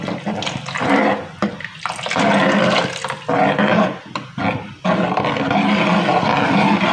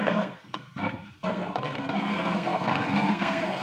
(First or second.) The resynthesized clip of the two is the second